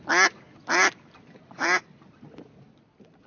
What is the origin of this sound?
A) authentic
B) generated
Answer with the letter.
A